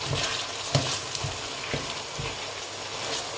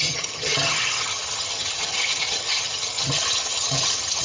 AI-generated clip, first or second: second